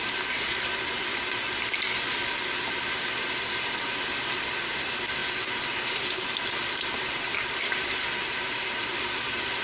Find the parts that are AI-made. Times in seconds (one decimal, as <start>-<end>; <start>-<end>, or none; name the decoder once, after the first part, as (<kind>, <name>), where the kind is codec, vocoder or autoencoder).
none